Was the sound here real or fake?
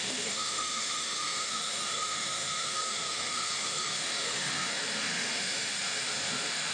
fake